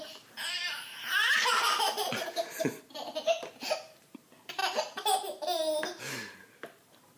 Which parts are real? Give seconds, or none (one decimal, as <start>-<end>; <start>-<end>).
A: 1.4-2.6; 4.6-6.0